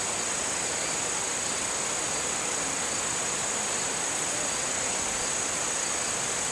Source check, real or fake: real